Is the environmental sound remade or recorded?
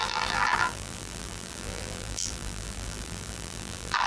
remade